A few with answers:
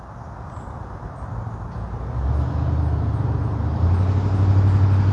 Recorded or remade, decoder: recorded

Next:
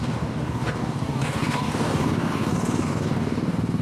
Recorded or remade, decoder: remade, codec, DAC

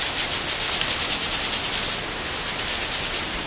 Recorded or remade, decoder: recorded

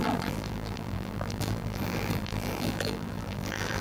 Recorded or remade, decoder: remade, vocoder, BigVGAN v2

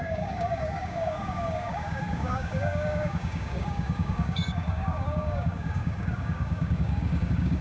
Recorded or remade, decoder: remade, codec, DAC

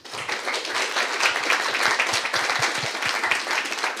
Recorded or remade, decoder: recorded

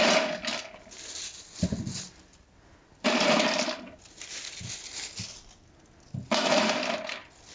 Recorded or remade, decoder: recorded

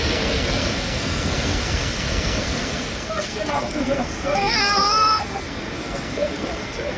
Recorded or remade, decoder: remade, codec, SNAC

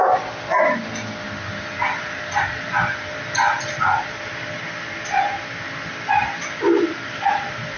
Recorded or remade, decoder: recorded